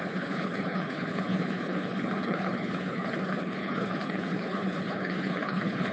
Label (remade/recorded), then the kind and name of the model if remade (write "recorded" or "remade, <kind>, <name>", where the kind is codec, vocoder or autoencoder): remade, codec, HILCodec